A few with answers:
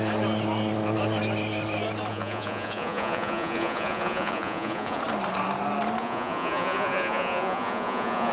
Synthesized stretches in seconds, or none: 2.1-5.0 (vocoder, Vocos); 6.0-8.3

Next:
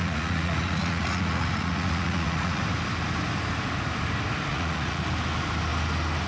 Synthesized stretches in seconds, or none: 0.0-2.6 (vocoder, Vocos); 4.5-5.0

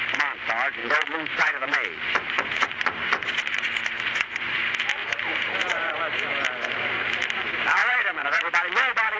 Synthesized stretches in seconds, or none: 0.8-4.6 (vocoder, Vocos); 5.0-6.0; 7.8-8.4

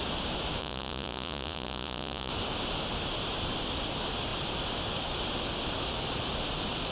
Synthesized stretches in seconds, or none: 0.6-2.3 (vocoder, Vocos)

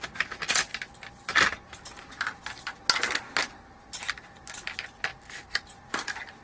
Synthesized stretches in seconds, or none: none

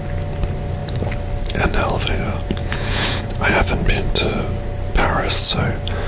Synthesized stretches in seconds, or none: 2.6-3.5 (vocoder, Vocos)

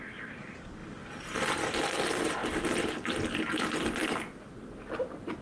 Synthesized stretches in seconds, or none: none

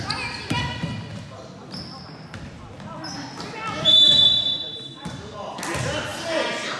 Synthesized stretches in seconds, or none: none